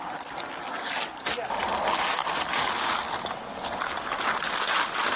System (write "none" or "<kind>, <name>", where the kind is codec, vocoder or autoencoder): none